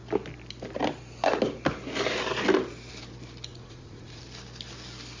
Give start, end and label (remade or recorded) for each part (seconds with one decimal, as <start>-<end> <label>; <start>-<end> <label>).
0.0-3.5 recorded; 3.5-4.2 remade; 4.2-5.2 recorded